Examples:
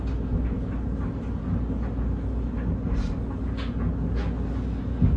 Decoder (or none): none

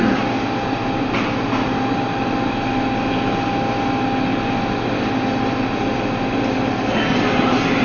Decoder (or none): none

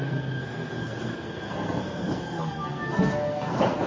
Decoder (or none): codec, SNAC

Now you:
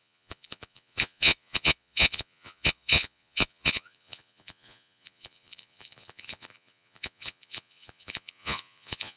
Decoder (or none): vocoder, Vocos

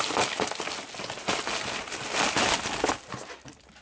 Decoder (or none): none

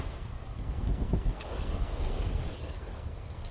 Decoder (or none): codec, SNAC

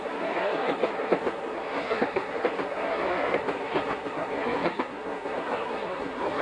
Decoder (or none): codec, SNAC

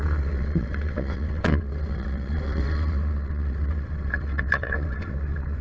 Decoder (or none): vocoder, WaveNeXt